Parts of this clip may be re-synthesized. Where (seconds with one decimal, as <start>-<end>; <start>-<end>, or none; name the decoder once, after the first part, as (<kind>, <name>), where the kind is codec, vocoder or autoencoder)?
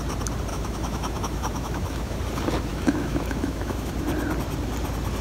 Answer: 0.5-2.2 (autoencoder, DAC-VAE); 2.7-3.9